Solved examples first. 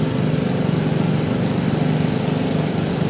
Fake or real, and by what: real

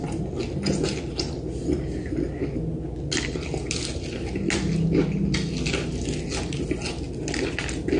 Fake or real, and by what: real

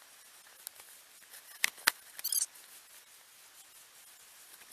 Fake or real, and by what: real